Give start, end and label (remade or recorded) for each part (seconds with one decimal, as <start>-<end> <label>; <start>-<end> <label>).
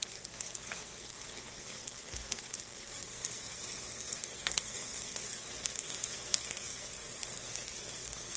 0.0-8.4 remade